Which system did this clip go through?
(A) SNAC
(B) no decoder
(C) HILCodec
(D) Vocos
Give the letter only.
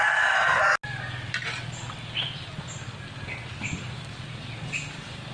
B